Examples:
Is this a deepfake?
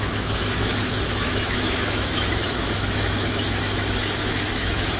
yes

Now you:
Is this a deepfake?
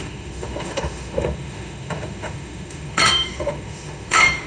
yes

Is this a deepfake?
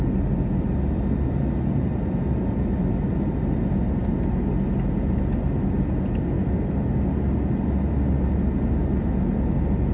no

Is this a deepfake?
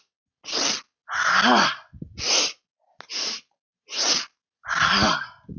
no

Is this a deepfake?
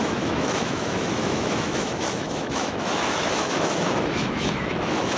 yes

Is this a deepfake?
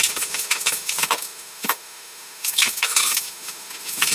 yes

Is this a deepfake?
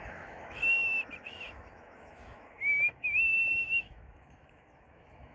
yes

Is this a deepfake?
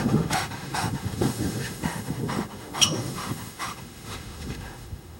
yes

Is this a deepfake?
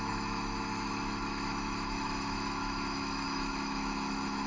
yes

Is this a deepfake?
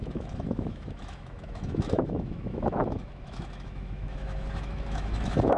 yes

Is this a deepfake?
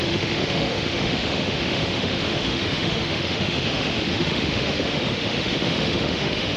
yes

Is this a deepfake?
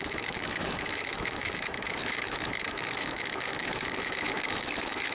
yes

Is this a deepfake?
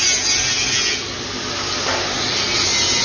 no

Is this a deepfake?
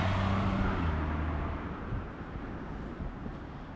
no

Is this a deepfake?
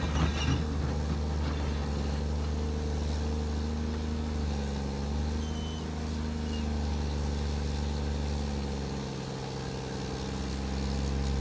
no